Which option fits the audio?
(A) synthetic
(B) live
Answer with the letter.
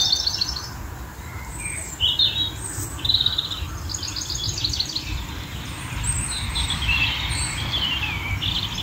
B